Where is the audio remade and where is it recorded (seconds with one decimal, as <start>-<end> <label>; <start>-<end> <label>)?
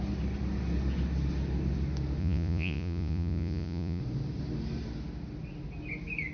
0.0-2.2 recorded; 2.2-4.0 remade; 4.0-6.3 recorded